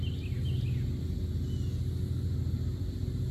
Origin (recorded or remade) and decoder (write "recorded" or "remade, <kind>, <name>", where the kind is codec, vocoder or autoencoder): recorded